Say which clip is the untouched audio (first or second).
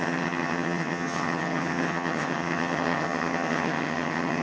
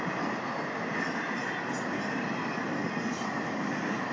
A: second